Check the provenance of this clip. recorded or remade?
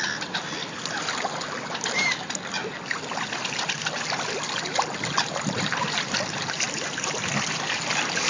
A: recorded